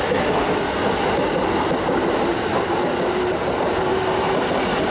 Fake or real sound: real